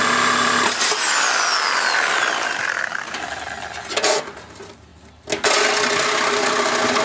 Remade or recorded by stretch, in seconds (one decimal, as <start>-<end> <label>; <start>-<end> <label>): 0.0-7.0 recorded